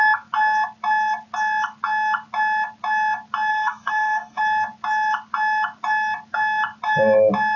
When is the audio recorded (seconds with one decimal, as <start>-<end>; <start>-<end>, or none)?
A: 0.0-3.5; 4.4-7.6